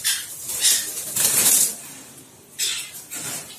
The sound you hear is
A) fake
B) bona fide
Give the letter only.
B